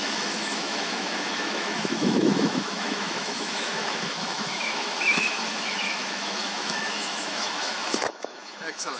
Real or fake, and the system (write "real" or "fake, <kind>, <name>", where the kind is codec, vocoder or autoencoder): fake, autoencoder, DAC-VAE